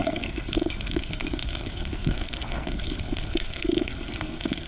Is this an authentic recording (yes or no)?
no